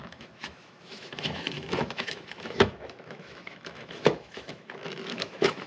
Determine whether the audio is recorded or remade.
remade